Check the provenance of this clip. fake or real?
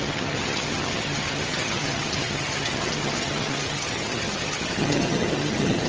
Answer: fake